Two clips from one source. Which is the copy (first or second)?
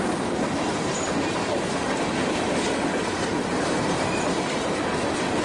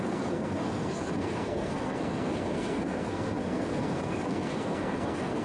second